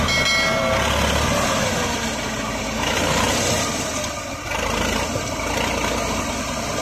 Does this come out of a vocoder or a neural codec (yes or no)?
no